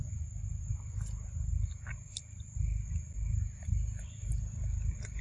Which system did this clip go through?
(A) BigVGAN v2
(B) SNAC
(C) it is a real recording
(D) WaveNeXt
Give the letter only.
C